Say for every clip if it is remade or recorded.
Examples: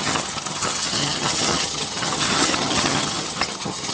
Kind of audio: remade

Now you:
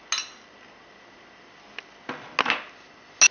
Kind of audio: recorded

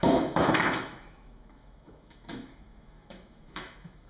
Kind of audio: remade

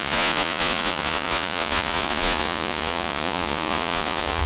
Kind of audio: remade